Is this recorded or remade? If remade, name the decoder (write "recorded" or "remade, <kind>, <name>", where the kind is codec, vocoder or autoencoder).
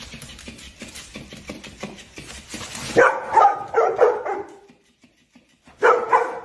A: recorded